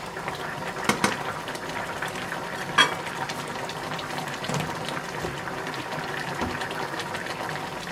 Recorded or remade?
recorded